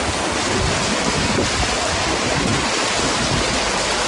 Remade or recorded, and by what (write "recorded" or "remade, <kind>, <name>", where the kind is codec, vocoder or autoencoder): recorded